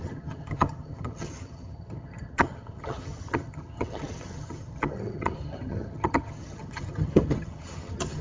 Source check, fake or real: fake